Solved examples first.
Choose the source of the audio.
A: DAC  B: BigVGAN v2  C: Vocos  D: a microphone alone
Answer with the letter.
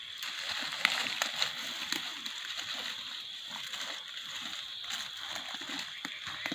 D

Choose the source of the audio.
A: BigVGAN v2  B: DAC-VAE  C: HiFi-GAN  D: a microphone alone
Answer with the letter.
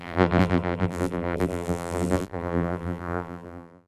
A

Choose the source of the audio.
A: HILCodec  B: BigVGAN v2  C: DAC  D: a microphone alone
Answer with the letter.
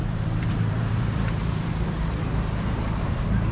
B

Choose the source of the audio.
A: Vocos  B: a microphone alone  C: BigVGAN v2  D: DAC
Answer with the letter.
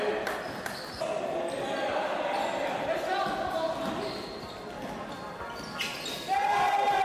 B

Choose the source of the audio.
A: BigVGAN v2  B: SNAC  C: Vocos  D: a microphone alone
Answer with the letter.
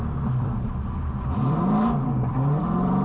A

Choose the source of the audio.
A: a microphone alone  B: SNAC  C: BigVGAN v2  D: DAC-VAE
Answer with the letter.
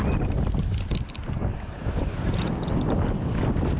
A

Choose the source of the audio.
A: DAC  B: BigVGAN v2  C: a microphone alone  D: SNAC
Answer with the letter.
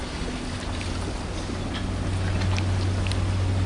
C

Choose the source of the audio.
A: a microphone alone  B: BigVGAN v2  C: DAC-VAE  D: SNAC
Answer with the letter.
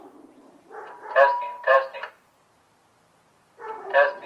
B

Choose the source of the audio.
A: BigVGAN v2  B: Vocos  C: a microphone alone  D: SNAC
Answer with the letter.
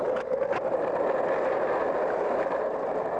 C